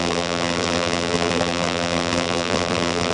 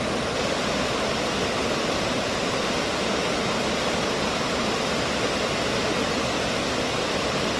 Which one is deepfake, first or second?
first